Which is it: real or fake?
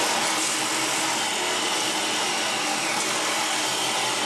real